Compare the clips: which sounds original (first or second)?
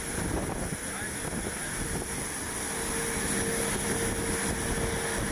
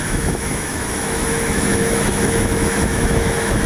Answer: first